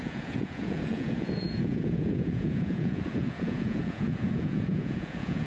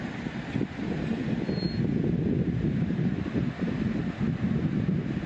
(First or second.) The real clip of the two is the second